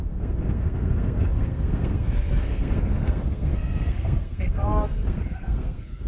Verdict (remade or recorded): remade